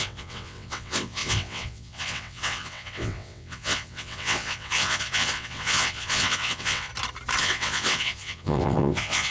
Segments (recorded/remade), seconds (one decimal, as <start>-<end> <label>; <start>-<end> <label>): 0.0-6.9 remade; 6.9-7.4 recorded; 7.4-9.3 remade